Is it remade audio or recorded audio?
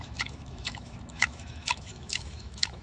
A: remade